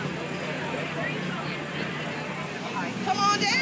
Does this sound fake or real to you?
real